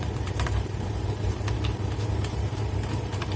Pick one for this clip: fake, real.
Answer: fake